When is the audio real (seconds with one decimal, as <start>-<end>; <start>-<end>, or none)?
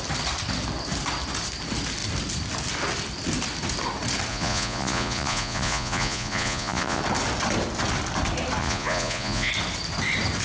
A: 0.0-4.3; 7.0-8.6; 9.5-10.4